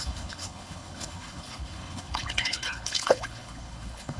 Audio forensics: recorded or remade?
remade